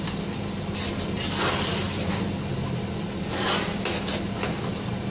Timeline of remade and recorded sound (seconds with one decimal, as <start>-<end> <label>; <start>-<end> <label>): 0.0-5.1 recorded